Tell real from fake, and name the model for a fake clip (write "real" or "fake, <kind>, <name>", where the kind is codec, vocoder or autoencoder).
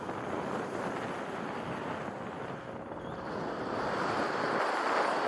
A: real